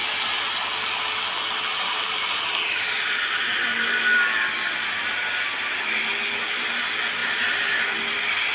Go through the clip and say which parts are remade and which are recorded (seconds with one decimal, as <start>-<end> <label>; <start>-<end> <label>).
0.0-1.7 recorded; 1.7-5.8 remade; 5.8-7.2 recorded; 7.2-7.8 remade; 7.8-8.5 recorded